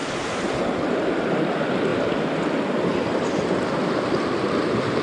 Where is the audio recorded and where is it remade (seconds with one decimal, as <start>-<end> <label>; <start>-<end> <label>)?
0.0-0.6 remade; 0.6-5.0 recorded